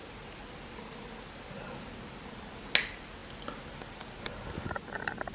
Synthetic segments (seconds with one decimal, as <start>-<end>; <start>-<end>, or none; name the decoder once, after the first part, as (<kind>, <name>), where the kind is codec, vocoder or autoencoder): none